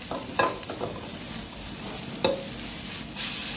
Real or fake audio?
real